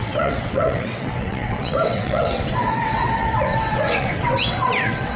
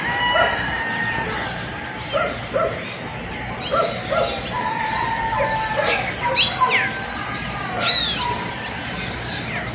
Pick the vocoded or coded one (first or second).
first